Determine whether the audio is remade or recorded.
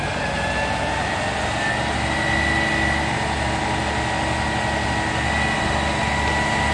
recorded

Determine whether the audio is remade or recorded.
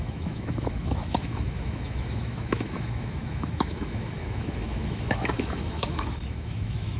remade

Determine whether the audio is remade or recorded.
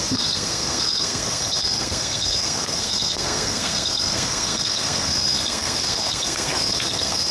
remade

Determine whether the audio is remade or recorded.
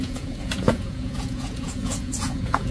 remade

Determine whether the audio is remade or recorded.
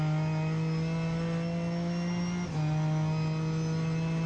recorded